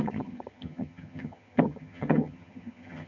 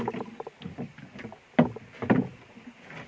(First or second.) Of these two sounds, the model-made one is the first